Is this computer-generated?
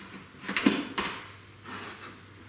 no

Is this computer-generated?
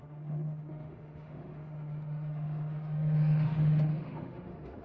yes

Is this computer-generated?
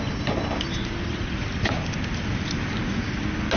no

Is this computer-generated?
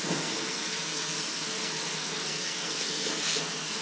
yes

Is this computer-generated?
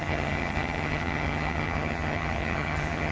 yes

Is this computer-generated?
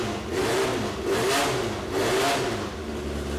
no